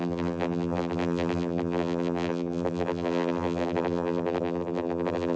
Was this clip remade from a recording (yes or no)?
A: yes